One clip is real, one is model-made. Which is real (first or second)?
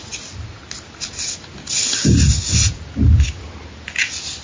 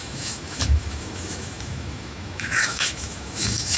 first